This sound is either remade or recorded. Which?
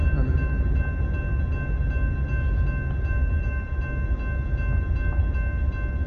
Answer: recorded